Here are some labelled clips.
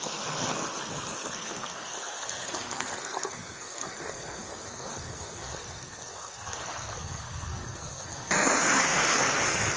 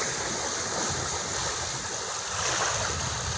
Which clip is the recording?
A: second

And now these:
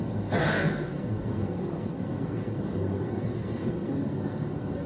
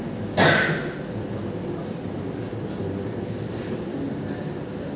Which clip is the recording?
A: second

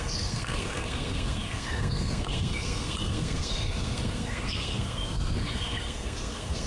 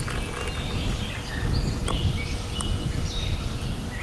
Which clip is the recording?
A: second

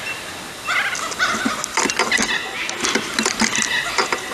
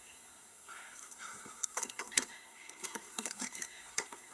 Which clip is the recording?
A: first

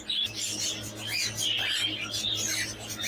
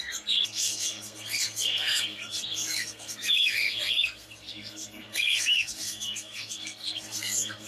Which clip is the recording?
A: first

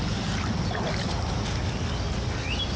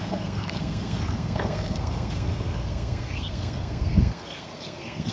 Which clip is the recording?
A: first